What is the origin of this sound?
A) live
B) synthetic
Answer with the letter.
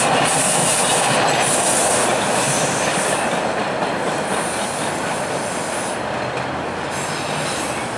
A